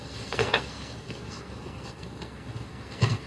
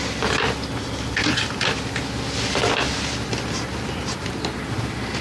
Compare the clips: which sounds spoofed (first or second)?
first